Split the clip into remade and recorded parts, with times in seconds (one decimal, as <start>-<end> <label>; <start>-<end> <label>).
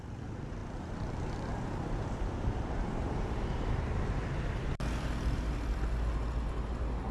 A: 0.0-0.6 recorded; 0.6-3.8 remade; 3.8-7.1 recorded